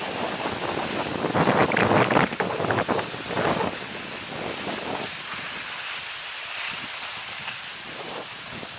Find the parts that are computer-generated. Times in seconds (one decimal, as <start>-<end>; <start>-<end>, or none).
none